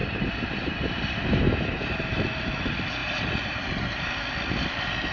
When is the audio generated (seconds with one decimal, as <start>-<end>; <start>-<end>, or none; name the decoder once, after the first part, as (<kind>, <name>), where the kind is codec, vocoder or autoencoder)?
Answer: 0.0-1.8 (vocoder, BigVGAN v2); 3.0-3.7